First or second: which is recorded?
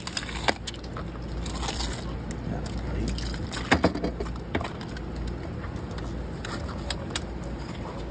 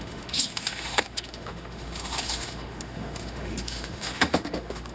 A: first